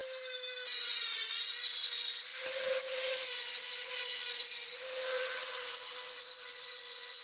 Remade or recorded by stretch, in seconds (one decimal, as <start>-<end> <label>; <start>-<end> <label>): 0.0-0.8 recorded; 0.8-7.2 remade

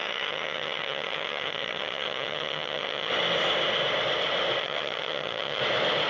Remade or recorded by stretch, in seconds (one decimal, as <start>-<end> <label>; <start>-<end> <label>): 0.0-3.1 remade; 3.1-4.6 recorded; 4.6-5.6 remade; 5.6-6.1 recorded

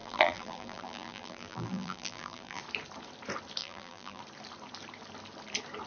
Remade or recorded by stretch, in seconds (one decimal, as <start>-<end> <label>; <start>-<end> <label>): 0.0-2.6 remade; 2.6-3.6 recorded; 3.6-4.2 remade; 4.2-5.9 recorded